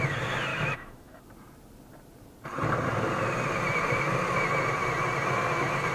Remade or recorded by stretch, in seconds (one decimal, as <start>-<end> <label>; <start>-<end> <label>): 0.0-0.5 recorded; 0.5-1.2 remade; 1.2-5.9 recorded